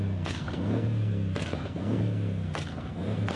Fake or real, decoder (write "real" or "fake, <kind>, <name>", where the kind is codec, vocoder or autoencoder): fake, codec, SNAC